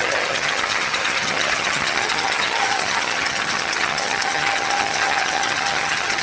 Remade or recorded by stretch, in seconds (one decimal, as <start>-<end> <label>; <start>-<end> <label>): 0.0-6.2 remade